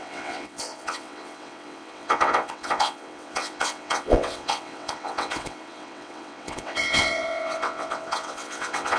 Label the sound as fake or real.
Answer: fake